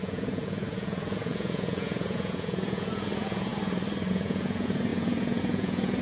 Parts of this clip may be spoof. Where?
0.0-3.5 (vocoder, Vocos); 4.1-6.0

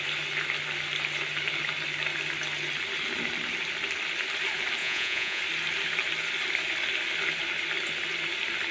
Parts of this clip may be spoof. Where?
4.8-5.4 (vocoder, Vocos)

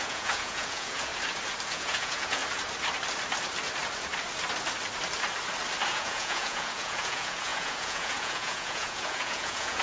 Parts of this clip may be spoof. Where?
0.0-1.1 (vocoder, Vocos); 1.7-2.4; 5.9-9.8